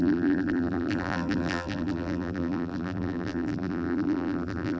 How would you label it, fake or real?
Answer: fake